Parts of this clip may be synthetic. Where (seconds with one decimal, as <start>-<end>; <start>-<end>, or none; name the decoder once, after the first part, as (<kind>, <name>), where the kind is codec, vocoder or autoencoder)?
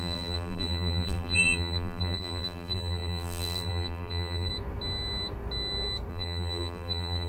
0.0-4.5 (vocoder, BigVGAN v2); 6.1-7.3